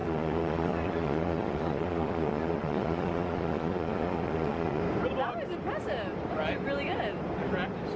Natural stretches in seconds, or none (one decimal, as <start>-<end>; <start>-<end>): 4.8-8.0